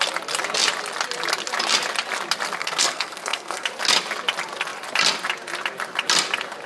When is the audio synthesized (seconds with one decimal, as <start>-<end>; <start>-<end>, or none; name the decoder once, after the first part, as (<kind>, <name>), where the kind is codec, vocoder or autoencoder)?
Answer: 2.6-3.7 (codec, SNAC)